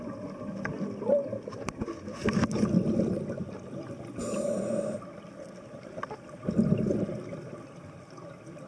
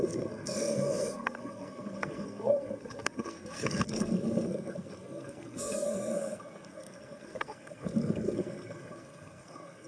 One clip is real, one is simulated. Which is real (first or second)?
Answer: first